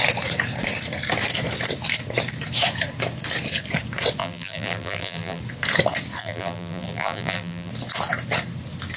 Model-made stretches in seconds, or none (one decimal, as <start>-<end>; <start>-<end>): 4.2-5.4; 6.2-7.7